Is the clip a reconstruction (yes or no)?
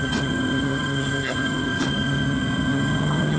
yes